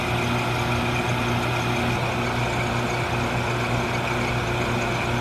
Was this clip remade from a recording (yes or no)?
no